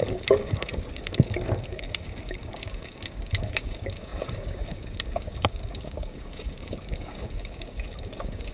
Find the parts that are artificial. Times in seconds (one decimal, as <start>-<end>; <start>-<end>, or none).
0.0-8.5